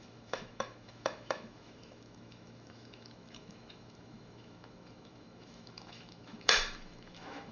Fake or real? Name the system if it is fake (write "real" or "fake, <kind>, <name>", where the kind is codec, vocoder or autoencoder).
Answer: fake, autoencoder, DAC-VAE